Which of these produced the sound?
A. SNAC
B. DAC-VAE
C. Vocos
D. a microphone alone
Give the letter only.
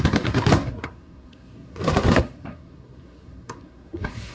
A